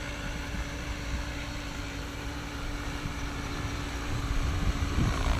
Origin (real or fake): fake